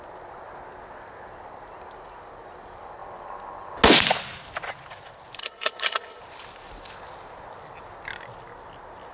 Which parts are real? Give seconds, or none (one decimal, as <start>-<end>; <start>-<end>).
0.0-5.4; 6.2-9.1